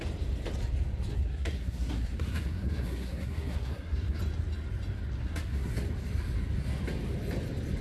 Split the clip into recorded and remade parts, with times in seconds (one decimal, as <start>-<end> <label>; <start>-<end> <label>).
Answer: 0.0-1.1 recorded; 1.1-4.2 remade; 4.2-5.2 recorded; 5.2-5.7 remade; 5.7-7.8 recorded